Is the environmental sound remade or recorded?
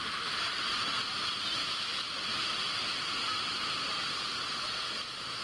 recorded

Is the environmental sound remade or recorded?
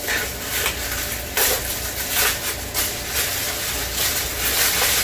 recorded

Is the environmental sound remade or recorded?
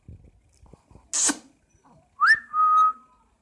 recorded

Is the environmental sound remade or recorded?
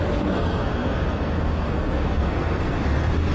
remade